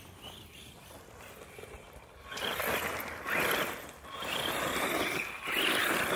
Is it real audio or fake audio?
real